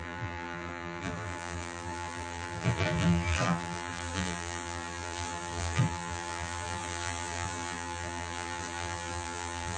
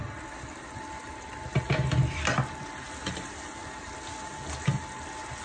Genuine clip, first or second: second